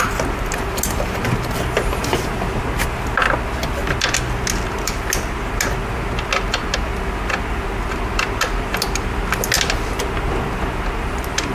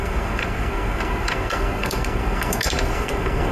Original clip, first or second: first